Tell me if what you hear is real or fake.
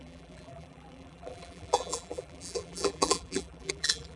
fake